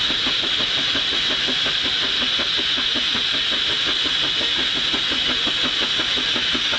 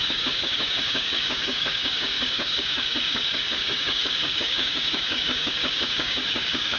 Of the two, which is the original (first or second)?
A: first